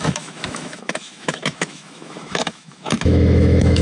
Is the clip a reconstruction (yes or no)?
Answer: yes